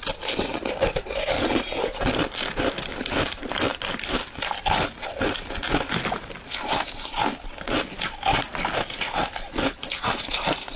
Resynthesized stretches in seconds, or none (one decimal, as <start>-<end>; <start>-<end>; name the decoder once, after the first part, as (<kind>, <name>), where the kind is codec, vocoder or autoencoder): none